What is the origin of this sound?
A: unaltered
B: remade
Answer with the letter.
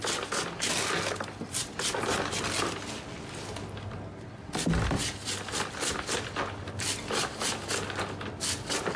A